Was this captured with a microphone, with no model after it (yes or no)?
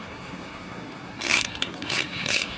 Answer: no